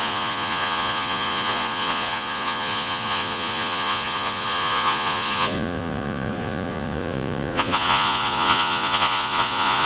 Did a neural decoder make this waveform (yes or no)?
yes